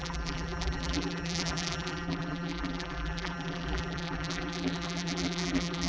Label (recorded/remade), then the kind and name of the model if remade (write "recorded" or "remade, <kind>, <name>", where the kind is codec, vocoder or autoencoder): remade, vocoder, BigVGAN v2